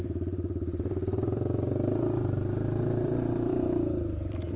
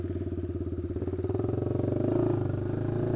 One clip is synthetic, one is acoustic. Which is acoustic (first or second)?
second